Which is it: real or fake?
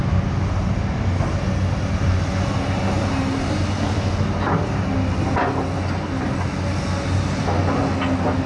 real